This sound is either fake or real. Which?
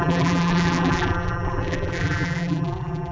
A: fake